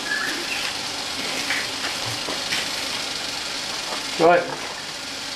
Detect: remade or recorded recorded